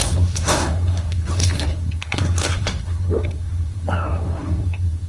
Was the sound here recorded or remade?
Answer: remade